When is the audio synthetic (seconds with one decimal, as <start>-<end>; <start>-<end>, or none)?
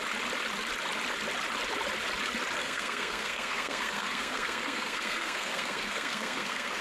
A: 2.6-6.8